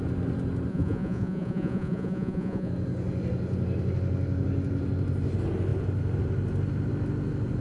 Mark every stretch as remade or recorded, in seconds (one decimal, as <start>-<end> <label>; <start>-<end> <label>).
0.0-0.7 recorded; 0.7-2.7 remade; 2.7-7.6 recorded